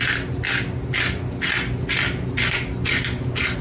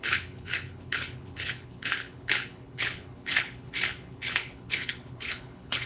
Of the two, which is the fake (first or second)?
second